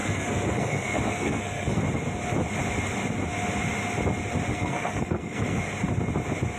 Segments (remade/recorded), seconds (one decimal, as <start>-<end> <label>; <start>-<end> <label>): 0.0-1.8 remade; 1.8-4.5 recorded; 4.5-5.6 remade; 5.6-6.6 recorded